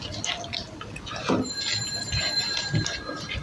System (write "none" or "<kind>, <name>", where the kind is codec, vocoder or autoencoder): none